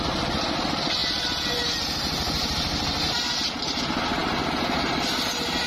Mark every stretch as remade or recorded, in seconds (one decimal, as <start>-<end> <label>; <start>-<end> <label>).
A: 0.0-5.7 recorded

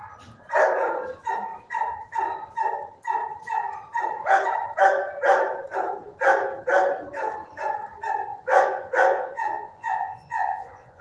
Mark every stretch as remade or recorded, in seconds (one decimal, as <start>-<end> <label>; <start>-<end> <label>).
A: 0.0-8.3 recorded; 8.3-11.0 remade

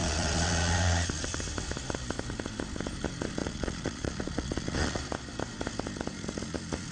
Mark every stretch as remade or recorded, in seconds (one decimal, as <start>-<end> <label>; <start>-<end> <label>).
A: 0.0-1.4 remade; 1.4-3.4 recorded; 3.4-5.0 remade; 5.0-6.9 recorded

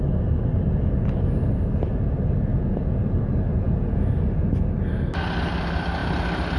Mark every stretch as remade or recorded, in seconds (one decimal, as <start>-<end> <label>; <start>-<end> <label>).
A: 0.0-2.5 recorded; 2.5-3.1 remade; 3.1-3.5 recorded; 3.5-4.0 remade; 4.0-6.6 recorded

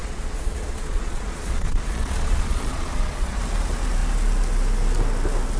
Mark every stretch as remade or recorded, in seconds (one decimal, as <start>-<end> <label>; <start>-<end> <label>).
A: 0.0-3.4 remade; 3.4-5.6 recorded

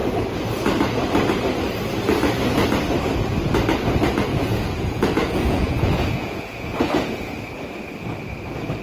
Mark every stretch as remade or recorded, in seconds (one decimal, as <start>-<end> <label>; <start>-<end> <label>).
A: 0.0-4.3 recorded; 4.3-7.3 remade; 7.3-8.8 recorded